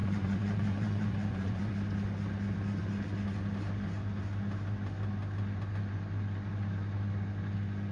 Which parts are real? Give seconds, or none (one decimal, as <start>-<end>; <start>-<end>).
1.7-7.9